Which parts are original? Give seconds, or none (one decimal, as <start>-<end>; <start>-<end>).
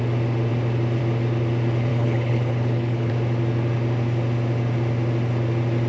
0.0-1.9; 3.1-5.9